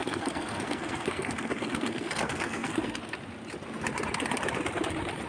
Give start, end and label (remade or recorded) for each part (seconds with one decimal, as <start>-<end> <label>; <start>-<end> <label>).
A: 0.0-3.0 remade; 3.0-5.3 recorded